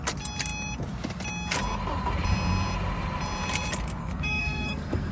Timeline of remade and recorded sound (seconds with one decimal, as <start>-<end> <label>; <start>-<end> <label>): 0.0-4.0 recorded; 4.0-5.1 remade